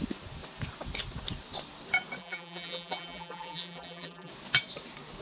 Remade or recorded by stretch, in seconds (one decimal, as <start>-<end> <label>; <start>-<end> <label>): 0.0-2.2 recorded; 2.2-4.3 remade; 4.3-5.2 recorded